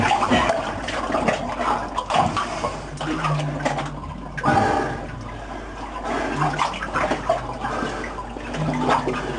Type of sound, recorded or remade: recorded